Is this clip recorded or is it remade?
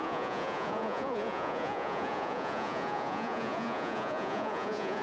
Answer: remade